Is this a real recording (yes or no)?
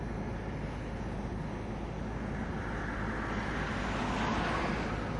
yes